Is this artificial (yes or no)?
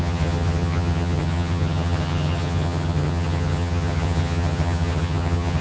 yes